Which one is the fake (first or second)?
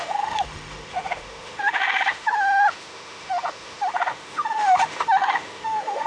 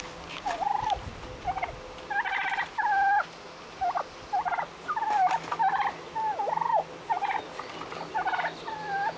first